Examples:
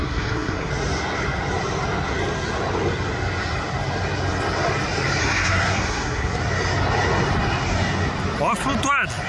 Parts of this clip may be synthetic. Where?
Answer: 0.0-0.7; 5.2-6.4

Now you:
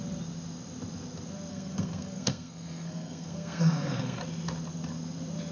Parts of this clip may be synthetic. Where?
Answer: 1.5-4.2

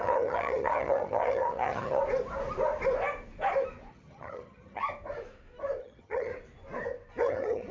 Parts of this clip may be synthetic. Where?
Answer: 0.0-2.0; 3.9-4.8; 5.8-6.3; 7.2-7.7

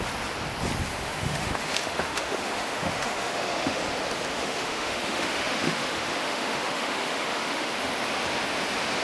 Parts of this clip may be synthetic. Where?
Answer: 0.9-3.8; 4.3-7.9

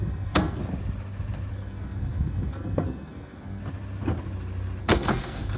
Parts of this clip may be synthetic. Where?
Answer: 0.0-0.6; 1.5-3.6; 4.8-5.6